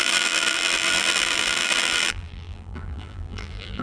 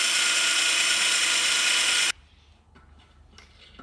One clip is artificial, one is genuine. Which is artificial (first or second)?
first